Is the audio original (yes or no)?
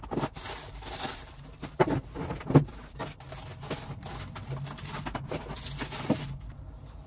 yes